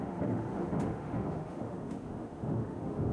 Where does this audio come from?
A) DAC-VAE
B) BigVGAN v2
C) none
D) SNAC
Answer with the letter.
A